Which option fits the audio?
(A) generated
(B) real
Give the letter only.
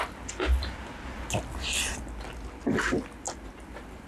B